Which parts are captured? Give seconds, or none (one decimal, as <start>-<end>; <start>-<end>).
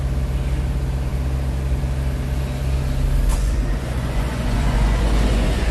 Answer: 0.0-3.3